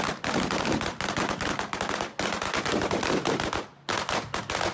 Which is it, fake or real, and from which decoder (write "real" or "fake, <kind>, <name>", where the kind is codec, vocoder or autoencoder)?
real